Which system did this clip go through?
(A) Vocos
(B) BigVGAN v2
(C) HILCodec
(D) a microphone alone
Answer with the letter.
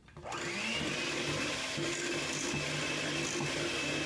D